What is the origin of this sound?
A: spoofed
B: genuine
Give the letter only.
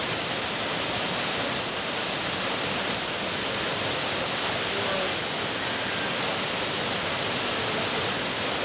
B